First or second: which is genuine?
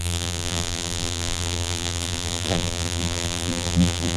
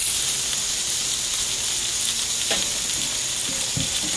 second